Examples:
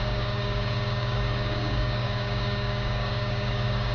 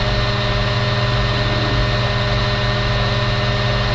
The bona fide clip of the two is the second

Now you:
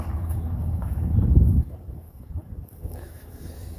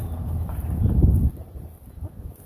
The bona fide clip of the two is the second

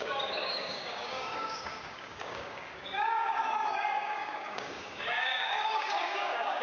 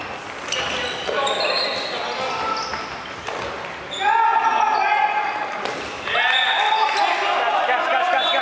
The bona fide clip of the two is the second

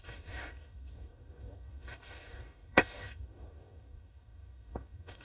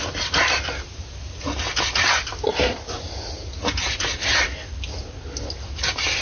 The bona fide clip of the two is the second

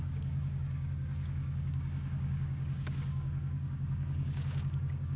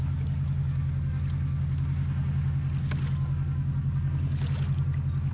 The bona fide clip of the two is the second